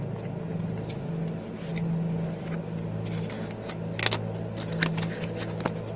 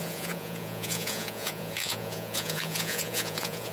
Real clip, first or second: first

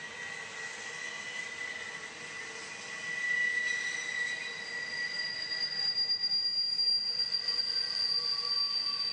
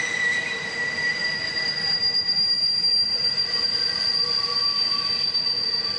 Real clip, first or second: first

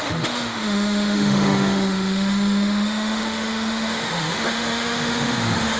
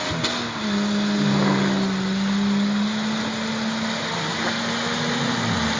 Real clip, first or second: second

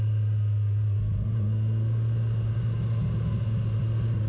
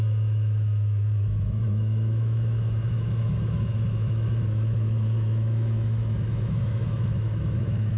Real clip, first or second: first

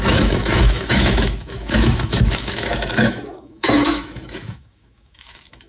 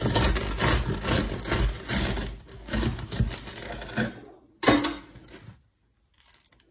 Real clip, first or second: second